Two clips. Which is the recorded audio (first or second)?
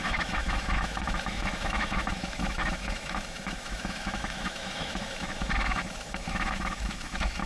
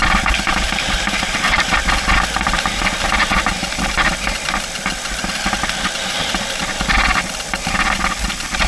second